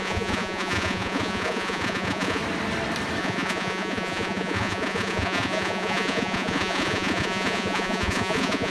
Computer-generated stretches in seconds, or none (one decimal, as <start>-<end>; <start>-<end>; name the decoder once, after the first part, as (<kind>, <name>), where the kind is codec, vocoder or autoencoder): 0.0-2.4 (vocoder, Vocos); 3.2-8.7